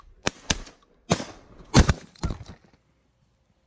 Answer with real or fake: real